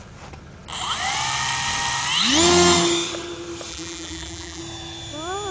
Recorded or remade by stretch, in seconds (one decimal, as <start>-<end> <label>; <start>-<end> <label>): 0.0-3.7 recorded; 3.7-4.6 remade; 4.6-5.5 recorded